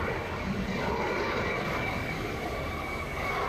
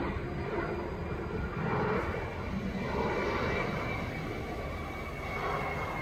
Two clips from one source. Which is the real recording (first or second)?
second